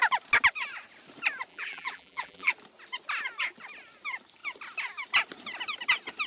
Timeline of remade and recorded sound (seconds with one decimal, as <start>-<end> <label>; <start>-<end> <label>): 0.0-1.5 recorded; 1.5-2.5 remade; 2.5-6.3 recorded